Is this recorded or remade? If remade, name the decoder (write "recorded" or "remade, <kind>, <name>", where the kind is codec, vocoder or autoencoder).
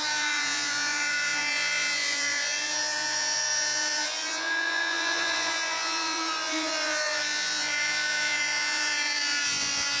remade, vocoder, Vocos